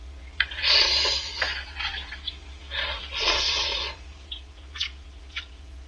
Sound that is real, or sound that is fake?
fake